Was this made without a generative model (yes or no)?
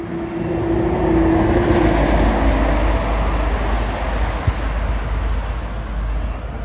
yes